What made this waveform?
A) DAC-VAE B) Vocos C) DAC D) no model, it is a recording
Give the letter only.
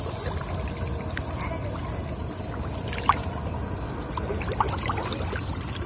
D